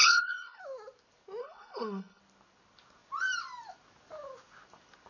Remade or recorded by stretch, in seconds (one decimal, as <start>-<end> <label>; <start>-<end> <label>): 0.0-0.6 remade; 0.6-1.4 recorded; 1.4-2.2 remade; 2.2-5.1 recorded